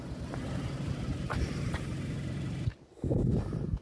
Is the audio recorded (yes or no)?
no